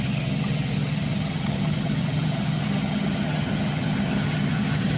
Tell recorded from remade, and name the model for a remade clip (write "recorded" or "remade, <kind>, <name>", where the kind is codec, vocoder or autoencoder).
remade, vocoder, HiFi-GAN